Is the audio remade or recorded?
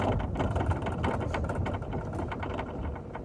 recorded